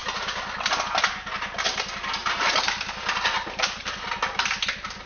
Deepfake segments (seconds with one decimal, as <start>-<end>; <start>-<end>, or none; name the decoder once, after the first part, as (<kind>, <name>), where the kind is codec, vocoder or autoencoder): 0.0-1.1 (vocoder, BigVGAN v2); 2.2-3.8